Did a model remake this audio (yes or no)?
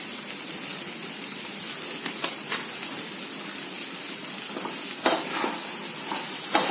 no